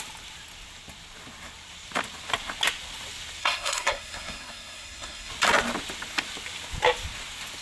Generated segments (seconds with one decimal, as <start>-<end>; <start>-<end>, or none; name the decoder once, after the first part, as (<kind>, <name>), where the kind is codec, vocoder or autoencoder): 3.4-5.3 (codec, SNAC)